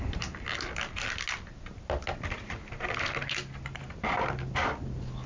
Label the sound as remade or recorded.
recorded